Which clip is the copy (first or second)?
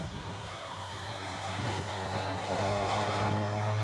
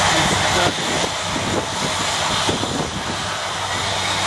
first